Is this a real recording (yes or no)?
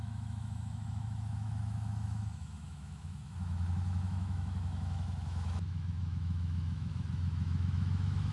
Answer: no